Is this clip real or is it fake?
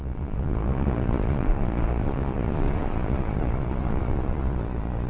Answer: fake